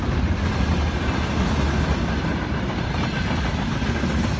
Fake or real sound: real